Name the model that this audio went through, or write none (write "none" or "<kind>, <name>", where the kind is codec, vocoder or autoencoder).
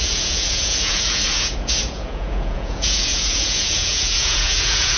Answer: vocoder, Vocos